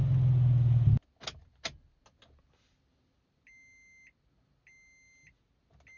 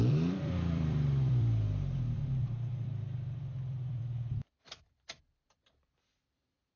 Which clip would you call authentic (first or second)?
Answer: first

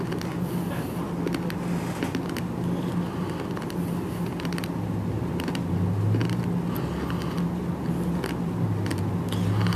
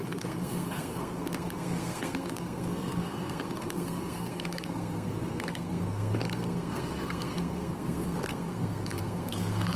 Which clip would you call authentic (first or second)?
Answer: first